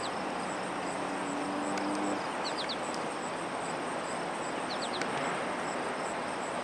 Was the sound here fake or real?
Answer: real